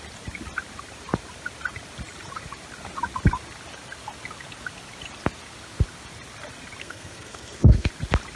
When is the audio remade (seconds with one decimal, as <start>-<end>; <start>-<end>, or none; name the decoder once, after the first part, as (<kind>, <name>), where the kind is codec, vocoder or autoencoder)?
6.8-7.9 (codec, SNAC)